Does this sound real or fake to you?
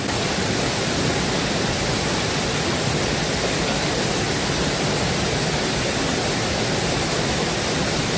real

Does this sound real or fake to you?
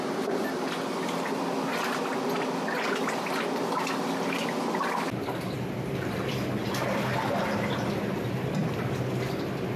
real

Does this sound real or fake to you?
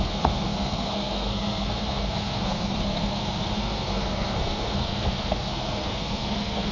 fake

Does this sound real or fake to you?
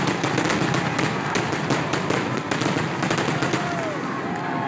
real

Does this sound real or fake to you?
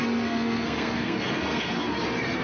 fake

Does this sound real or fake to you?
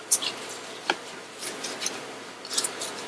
real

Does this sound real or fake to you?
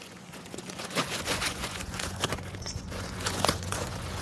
fake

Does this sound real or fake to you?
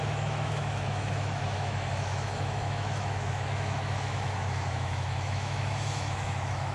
fake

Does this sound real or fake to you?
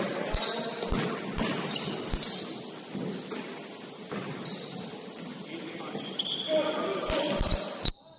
real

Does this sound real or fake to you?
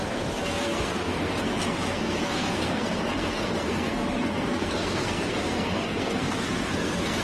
fake